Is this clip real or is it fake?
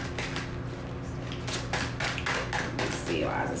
real